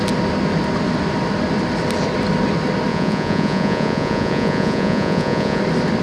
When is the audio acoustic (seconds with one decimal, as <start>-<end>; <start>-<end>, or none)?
0.0-2.9; 5.6-6.0